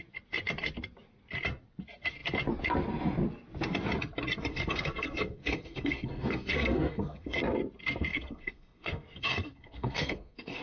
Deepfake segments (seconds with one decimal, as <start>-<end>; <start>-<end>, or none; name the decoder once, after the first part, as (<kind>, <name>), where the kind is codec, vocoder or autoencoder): 4.5-7.4 (codec, SNAC); 8.1-10.6